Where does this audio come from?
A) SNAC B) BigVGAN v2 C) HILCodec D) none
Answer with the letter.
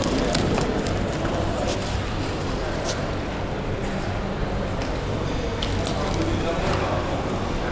B